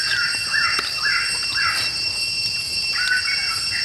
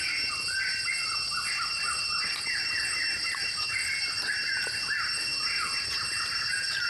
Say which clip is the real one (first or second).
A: first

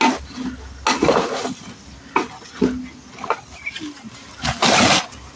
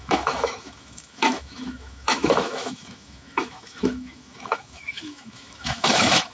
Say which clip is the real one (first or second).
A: first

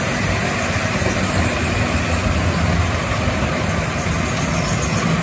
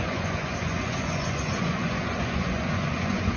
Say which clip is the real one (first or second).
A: first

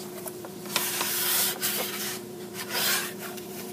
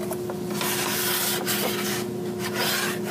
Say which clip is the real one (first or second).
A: second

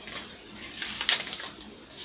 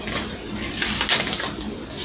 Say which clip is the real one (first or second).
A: second